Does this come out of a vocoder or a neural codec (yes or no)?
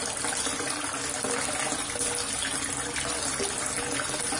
no